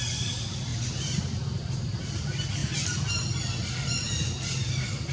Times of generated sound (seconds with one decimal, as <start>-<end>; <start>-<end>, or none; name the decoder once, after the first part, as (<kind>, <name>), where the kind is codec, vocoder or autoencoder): 0.0-0.7 (vocoder, BigVGAN v2); 1.2-2.6; 4.3-5.1